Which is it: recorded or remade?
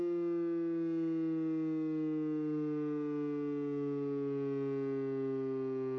recorded